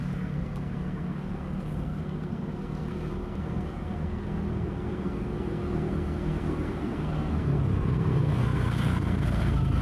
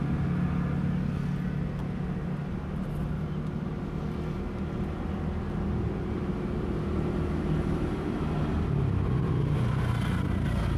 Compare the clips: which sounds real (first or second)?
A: second